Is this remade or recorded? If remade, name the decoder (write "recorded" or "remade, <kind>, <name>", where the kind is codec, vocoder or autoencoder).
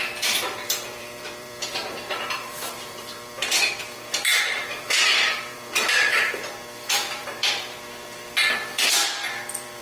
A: remade, vocoder, BigVGAN v2